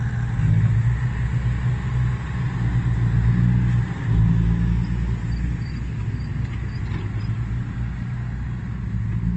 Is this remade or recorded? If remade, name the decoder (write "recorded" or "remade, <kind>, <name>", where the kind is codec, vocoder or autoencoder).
recorded